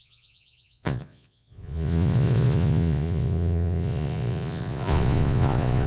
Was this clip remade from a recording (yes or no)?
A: yes